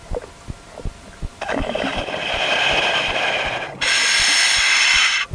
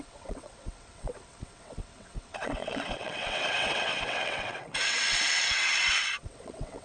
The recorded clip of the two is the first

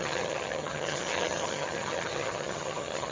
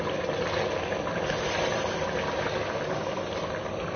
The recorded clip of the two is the second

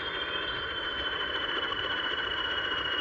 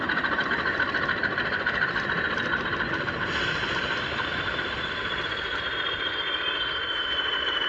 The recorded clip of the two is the first